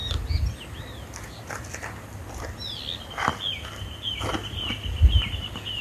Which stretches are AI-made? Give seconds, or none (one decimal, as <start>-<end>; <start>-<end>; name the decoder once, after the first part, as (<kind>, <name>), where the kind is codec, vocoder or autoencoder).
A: none